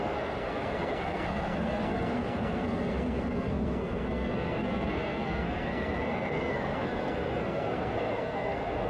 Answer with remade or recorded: remade